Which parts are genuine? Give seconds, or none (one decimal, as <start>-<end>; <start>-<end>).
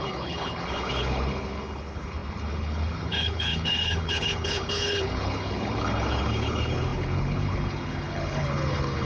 none